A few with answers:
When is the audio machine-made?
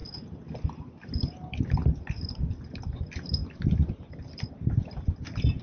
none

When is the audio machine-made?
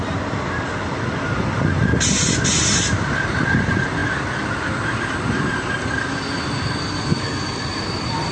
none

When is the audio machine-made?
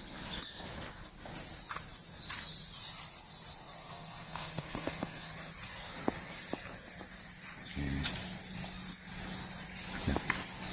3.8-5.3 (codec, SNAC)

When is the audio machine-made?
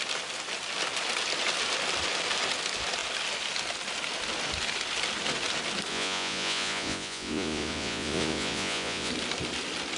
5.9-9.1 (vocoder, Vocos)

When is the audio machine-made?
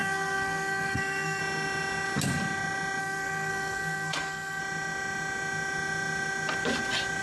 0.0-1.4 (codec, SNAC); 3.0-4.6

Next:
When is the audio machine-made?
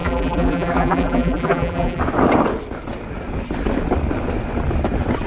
0.0-2.0 (vocoder, BigVGAN v2)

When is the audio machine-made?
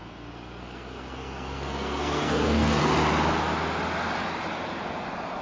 0.0-2.8 (codec, SNAC)